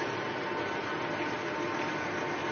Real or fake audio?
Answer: real